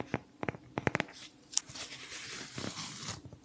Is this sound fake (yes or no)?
no